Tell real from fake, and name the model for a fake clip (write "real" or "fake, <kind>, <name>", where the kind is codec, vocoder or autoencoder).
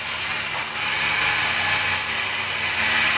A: real